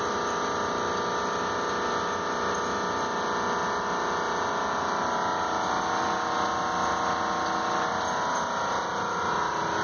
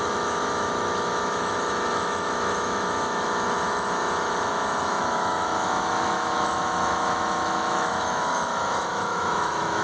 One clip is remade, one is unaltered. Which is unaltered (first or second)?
first